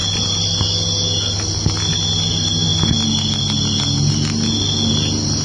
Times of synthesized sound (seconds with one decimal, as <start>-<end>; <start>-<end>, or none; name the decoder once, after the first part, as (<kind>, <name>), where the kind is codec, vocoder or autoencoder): none